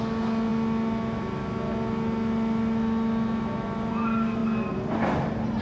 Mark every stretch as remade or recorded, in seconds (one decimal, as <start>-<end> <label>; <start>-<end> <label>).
0.0-5.6 recorded